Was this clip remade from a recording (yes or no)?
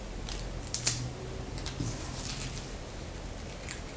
no